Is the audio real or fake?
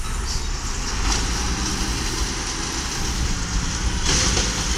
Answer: real